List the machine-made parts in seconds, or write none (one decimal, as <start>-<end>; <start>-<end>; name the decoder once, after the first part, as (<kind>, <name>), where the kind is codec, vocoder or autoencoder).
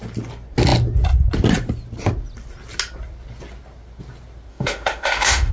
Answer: 4.5-5.5 (autoencoder, DAC-VAE)